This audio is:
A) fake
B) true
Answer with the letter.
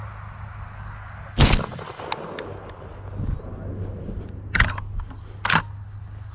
B